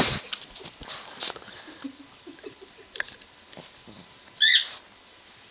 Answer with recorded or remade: recorded